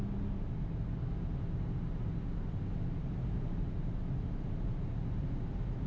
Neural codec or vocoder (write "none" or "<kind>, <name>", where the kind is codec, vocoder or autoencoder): none